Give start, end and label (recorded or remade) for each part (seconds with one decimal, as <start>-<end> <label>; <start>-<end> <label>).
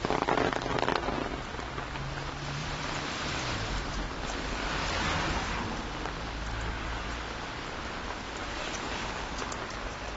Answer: 0.0-2.6 recorded; 2.6-4.5 remade; 4.5-10.2 recorded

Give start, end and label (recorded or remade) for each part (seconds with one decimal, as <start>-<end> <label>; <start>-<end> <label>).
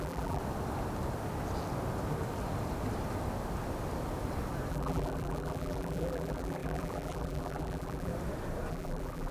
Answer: 0.0-0.4 remade; 0.4-4.7 recorded; 4.7-8.1 remade; 8.1-8.7 recorded; 8.7-9.3 remade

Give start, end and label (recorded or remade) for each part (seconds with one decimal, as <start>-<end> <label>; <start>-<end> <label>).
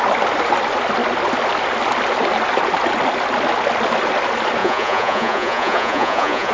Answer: 0.0-4.6 recorded; 4.6-6.5 remade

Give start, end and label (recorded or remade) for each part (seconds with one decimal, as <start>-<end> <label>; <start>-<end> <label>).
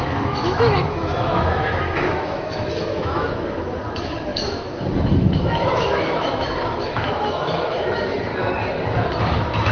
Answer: 0.0-8.3 remade; 8.3-9.2 recorded; 9.2-9.7 remade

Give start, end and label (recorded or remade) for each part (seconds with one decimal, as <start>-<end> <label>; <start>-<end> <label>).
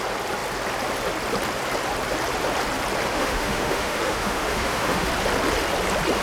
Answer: 0.0-3.1 recorded; 3.1-5.1 remade; 5.1-6.2 recorded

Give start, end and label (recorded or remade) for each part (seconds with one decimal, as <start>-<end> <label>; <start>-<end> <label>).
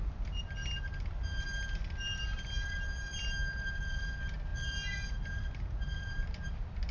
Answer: 0.0-2.3 recorded; 2.3-3.8 remade; 3.8-4.5 recorded; 4.5-6.5 remade; 6.5-6.9 recorded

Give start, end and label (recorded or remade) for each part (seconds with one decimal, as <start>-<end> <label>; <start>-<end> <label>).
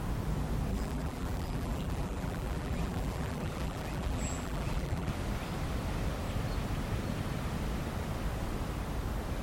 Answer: 0.0-0.7 recorded; 0.7-5.1 remade; 5.1-9.4 recorded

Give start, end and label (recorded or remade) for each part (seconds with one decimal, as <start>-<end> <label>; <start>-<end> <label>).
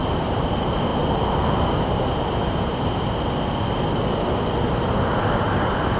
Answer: 0.0-6.0 recorded